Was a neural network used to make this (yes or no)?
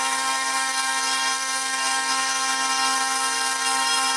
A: yes